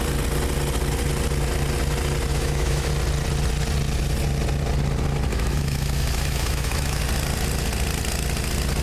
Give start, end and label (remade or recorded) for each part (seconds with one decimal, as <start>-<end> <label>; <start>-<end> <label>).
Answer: 0.0-2.3 recorded; 2.3-2.9 remade; 2.9-5.3 recorded; 5.3-7.0 remade; 7.0-8.8 recorded